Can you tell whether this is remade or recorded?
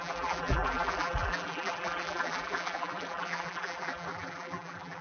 remade